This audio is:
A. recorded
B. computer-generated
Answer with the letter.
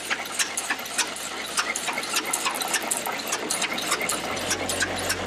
A